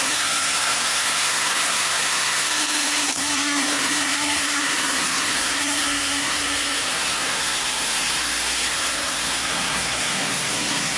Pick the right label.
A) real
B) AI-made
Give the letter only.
B